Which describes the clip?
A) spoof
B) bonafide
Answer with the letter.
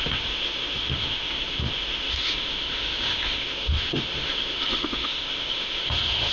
A